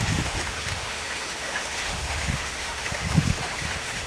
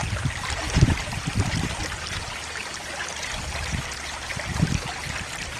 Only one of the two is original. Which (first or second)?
second